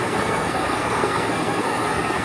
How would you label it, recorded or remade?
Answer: remade